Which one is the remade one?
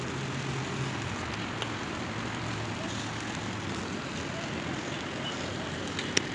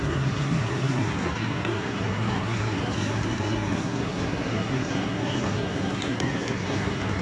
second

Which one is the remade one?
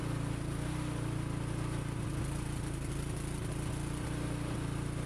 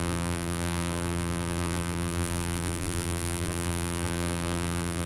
second